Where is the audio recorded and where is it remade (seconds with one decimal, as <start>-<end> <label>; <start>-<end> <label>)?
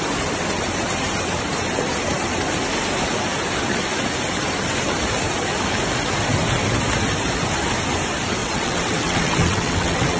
0.0-8.4 recorded; 8.4-10.2 remade